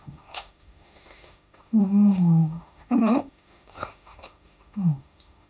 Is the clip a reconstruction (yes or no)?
yes